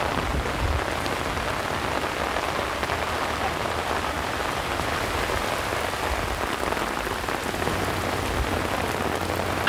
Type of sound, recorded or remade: recorded